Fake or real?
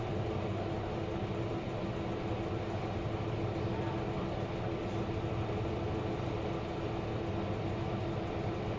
real